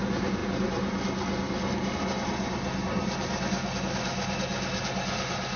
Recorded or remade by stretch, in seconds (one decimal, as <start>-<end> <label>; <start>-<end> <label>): 0.0-5.6 recorded